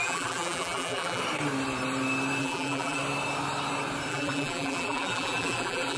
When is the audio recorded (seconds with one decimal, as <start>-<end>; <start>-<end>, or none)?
1.2-2.4; 3.0-4.1